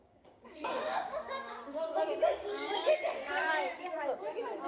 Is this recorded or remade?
remade